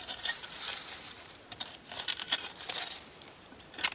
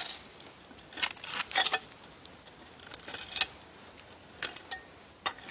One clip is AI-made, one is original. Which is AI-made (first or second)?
first